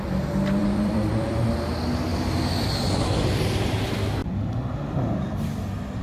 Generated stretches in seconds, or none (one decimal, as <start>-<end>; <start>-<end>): 0.6-1.4; 2.1-3.1